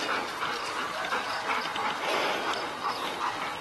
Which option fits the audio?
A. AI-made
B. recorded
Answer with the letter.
B